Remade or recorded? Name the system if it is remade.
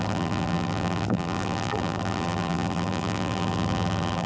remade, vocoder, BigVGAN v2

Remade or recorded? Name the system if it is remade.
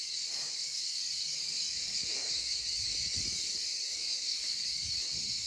remade, codec, DAC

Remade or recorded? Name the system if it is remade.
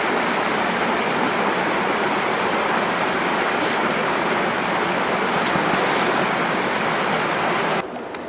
recorded